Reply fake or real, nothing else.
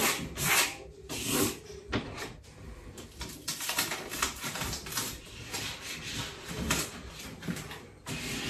fake